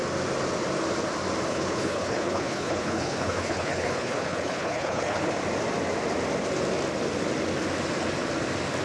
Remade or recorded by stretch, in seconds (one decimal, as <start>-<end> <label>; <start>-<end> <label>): 0.0-1.5 recorded; 1.5-5.3 remade; 5.3-8.8 recorded